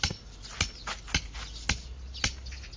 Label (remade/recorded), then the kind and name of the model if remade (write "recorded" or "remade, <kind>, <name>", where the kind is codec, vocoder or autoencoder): recorded